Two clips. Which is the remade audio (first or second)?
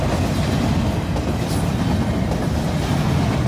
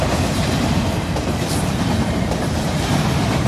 second